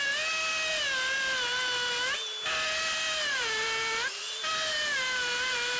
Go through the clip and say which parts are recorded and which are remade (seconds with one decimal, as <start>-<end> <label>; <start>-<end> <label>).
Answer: 0.0-5.8 recorded